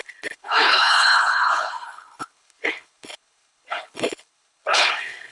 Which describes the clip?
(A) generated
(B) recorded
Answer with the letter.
A